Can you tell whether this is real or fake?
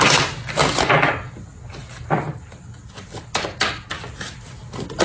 real